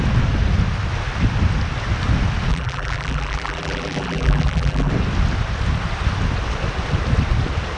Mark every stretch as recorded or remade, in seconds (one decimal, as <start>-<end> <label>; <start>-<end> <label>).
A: 0.0-2.5 recorded; 2.5-4.9 remade; 4.9-7.8 recorded